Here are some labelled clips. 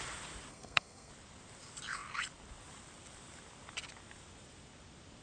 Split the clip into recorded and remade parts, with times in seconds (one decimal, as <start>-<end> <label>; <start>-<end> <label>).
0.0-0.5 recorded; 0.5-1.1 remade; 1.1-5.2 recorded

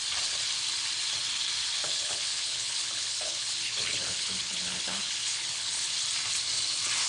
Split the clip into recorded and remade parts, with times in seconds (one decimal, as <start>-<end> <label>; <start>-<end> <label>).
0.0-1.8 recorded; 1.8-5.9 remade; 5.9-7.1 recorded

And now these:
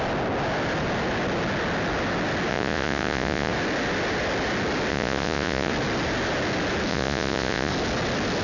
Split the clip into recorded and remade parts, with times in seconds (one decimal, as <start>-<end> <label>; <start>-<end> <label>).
0.0-2.5 recorded; 2.5-3.5 remade; 3.5-4.9 recorded; 4.9-5.7 remade; 5.7-6.9 recorded; 6.9-7.7 remade; 7.7-8.4 recorded

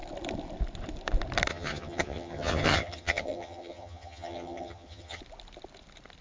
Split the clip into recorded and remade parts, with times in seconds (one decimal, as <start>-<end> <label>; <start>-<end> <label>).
0.0-1.5 recorded; 1.5-5.2 remade; 5.2-6.2 recorded